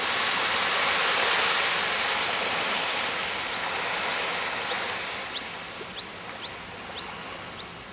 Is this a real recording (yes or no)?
yes